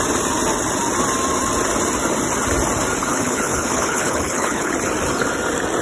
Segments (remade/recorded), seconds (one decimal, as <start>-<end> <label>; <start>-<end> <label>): 0.0-3.1 recorded; 3.1-4.7 remade; 4.7-5.8 recorded